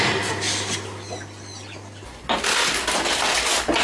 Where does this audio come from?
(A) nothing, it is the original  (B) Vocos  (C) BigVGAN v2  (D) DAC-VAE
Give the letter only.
A